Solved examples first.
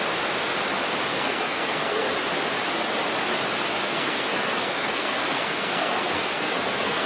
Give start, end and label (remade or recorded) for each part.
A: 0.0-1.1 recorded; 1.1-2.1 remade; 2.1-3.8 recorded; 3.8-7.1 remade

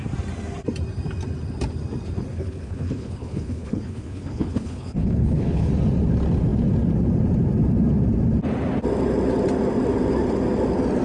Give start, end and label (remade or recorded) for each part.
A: 0.0-2.3 recorded; 2.3-5.7 remade; 5.7-11.0 recorded